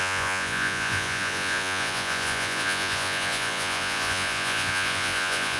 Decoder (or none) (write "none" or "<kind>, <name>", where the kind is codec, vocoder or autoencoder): vocoder, Vocos